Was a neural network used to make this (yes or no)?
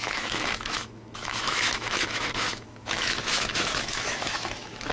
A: yes